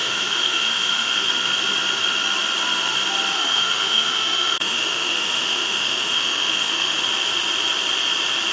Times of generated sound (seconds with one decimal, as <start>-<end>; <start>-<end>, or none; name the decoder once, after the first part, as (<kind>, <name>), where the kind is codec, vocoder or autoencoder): 0.0-1.3 (autoencoder, DAC-VAE); 3.3-7.0